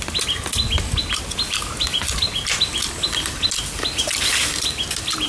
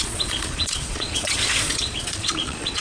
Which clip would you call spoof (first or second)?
second